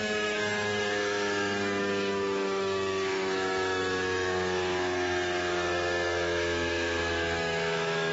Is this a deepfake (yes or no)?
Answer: yes